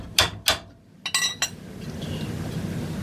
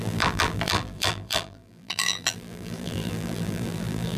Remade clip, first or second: second